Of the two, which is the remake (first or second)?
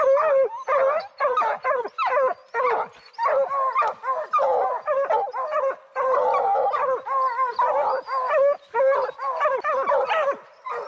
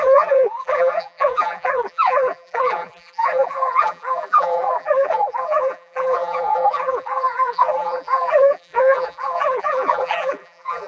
second